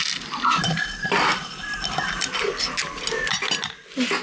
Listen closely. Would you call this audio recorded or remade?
recorded